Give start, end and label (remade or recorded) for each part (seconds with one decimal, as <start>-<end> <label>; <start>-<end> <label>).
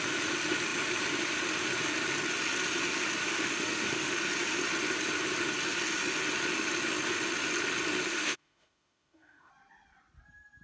0.0-3.2 recorded; 3.2-4.2 remade; 4.2-8.1 recorded; 8.1-9.5 remade; 9.5-10.6 recorded